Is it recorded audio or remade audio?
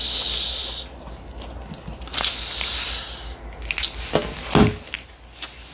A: recorded